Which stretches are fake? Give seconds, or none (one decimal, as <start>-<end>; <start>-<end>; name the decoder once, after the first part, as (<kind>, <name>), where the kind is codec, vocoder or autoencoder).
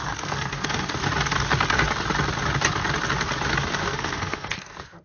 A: 0.0-1.0 (codec, SNAC); 3.7-5.0